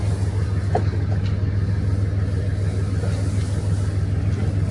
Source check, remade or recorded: recorded